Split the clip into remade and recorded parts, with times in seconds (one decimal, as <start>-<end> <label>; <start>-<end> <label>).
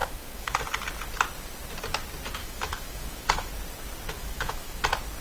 0.0-0.6 remade; 0.6-2.4 recorded; 2.4-3.5 remade; 3.5-4.2 recorded; 4.2-4.8 remade; 4.8-5.2 recorded